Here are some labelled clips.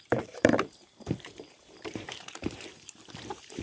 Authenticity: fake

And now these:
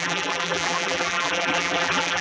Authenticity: fake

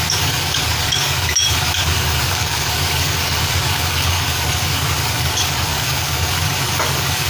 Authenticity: fake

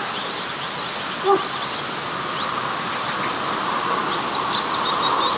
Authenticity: real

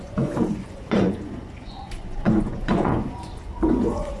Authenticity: fake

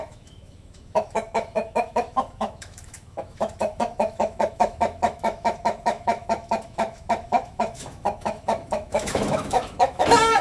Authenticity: fake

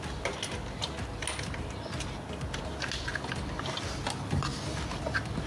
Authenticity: real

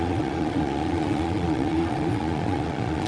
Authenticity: fake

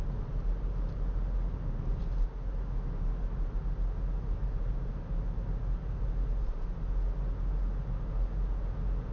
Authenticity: real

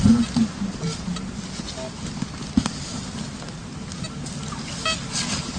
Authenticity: real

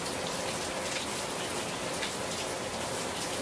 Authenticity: real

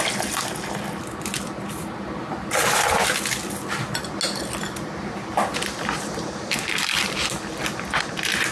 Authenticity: real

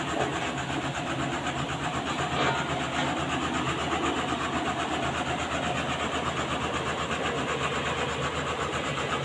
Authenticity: real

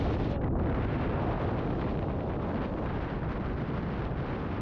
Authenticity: real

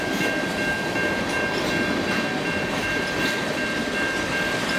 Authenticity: real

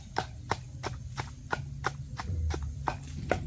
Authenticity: real